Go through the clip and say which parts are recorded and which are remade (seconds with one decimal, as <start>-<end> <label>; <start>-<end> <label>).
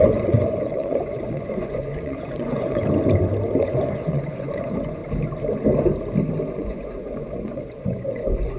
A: 0.0-2.8 remade; 2.8-3.6 recorded; 3.6-5.0 remade; 5.0-6.5 recorded; 6.5-8.6 remade